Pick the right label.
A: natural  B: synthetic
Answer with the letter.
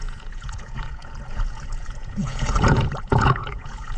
B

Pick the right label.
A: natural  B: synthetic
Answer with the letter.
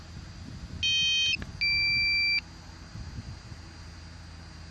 A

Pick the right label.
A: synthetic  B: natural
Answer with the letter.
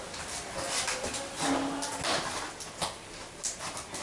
B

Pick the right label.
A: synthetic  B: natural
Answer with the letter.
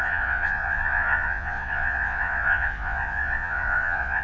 A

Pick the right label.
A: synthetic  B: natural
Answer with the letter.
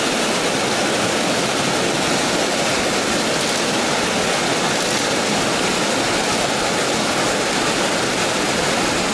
B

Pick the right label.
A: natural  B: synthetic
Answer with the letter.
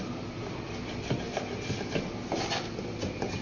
A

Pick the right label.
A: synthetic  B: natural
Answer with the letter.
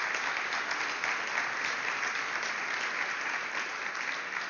B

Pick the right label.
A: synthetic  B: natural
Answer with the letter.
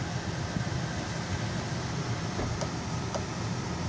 B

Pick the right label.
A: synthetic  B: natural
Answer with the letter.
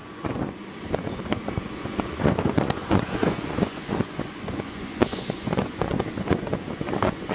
A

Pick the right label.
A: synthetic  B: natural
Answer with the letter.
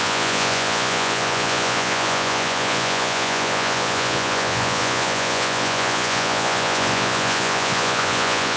A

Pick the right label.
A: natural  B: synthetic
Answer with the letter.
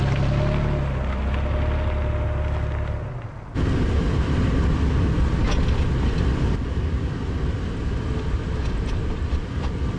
A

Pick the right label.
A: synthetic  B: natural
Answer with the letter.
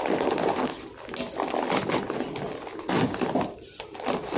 B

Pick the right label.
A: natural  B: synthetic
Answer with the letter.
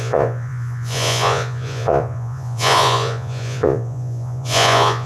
B